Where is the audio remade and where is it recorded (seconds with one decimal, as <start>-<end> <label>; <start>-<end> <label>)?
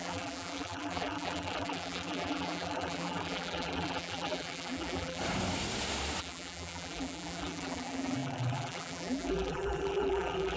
0.0-5.2 remade; 5.2-6.2 recorded; 6.2-10.6 remade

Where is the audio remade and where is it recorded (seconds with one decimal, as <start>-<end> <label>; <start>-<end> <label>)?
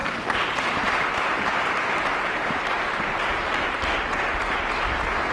0.0-2.8 remade; 2.8-3.3 recorded; 3.3-4.4 remade; 4.4-5.3 recorded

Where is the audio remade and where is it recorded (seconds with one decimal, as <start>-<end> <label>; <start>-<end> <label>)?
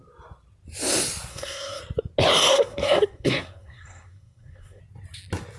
0.0-1.3 recorded; 1.3-1.8 remade; 1.8-2.5 recorded; 2.5-4.8 remade; 4.8-5.6 recorded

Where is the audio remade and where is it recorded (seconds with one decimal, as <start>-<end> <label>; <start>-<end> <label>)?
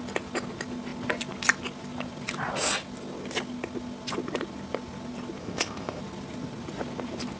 0.0-5.4 recorded; 5.4-6.0 remade; 6.0-7.4 recorded